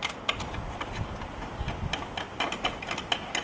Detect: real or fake real